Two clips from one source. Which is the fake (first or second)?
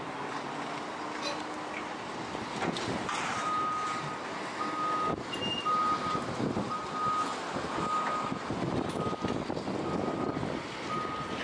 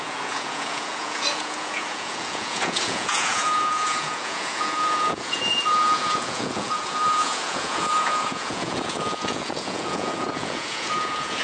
second